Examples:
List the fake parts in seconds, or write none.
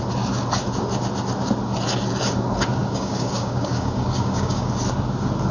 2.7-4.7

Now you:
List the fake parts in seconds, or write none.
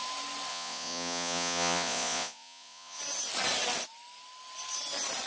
0.5-3.0